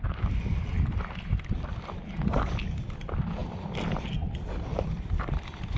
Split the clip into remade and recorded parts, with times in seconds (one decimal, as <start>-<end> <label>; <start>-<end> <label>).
0.0-3.4 recorded; 3.4-5.8 remade